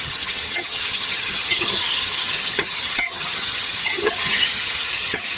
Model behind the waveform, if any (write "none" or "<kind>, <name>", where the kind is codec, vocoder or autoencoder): vocoder, HiFi-GAN